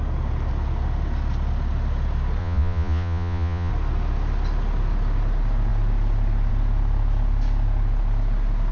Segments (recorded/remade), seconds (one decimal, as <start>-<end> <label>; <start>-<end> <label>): 0.0-2.4 recorded; 2.4-3.7 remade; 3.7-8.7 recorded